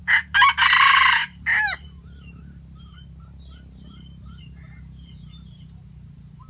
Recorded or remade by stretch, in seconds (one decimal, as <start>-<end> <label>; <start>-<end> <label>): 0.0-6.5 recorded